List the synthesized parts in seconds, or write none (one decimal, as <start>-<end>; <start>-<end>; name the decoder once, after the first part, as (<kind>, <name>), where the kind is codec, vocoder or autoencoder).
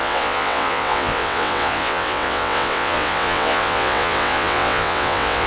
0.0-5.5 (vocoder, WaveNeXt)